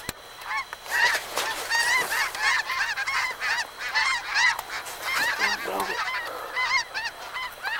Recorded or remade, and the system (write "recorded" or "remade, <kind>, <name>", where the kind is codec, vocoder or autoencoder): recorded